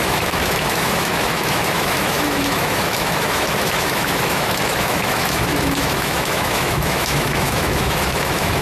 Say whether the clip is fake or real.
fake